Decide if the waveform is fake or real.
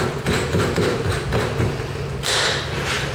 real